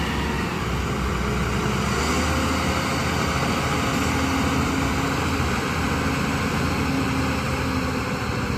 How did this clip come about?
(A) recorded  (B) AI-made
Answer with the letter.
A